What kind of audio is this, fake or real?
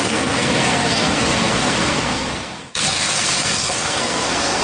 fake